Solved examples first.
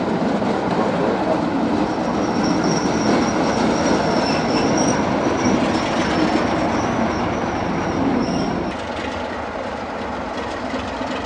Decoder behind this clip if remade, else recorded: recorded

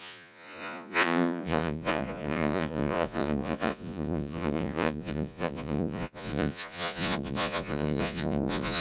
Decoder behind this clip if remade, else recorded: remade, vocoder, Vocos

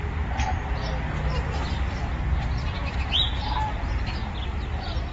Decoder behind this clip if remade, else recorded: recorded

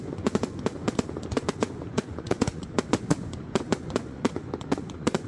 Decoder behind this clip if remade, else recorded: remade, vocoder, Vocos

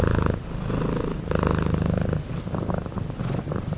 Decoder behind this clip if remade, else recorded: recorded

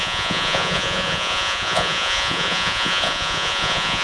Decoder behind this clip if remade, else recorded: remade, vocoder, Vocos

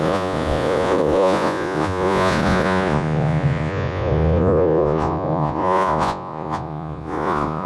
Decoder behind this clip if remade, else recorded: remade, vocoder, Vocos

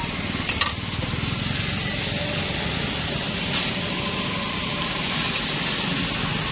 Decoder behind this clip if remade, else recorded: recorded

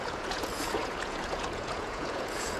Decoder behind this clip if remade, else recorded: remade, vocoder, Vocos